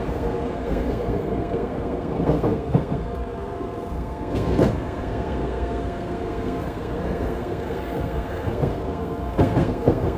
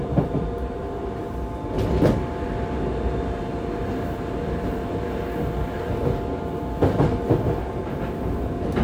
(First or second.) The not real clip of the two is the first